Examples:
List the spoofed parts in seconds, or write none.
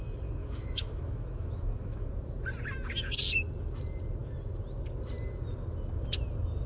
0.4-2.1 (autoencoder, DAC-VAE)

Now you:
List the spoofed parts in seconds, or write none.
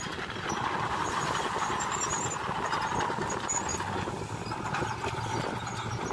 none